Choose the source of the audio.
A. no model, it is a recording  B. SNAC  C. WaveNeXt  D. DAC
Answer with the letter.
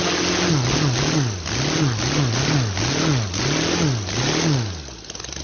A